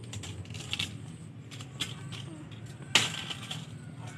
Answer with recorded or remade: recorded